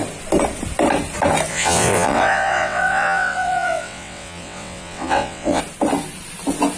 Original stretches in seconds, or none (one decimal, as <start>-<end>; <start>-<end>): 0.0-1.5; 5.6-6.8